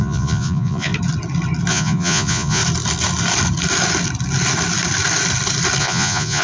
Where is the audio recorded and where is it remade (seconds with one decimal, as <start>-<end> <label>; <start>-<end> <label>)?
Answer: 0.0-0.9 remade; 0.9-1.7 recorded; 1.7-2.6 remade; 2.6-5.8 recorded; 5.8-6.4 remade